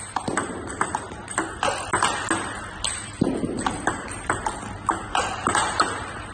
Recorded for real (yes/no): yes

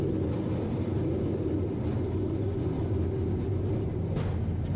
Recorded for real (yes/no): yes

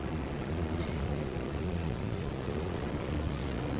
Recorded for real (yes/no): no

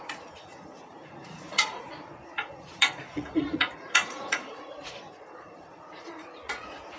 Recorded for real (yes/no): no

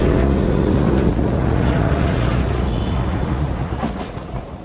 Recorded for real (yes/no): no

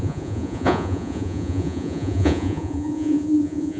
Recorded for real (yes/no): no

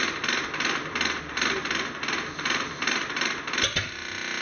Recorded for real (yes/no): yes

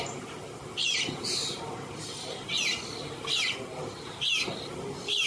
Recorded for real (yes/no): yes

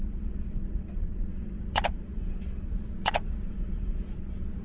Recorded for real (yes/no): no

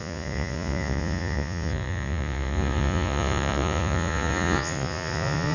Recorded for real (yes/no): no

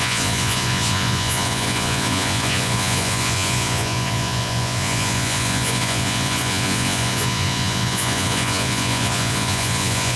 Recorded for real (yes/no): no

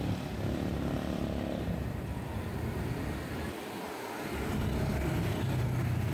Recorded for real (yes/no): yes